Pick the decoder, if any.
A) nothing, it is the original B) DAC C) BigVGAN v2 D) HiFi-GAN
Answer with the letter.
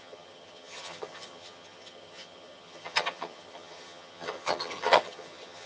D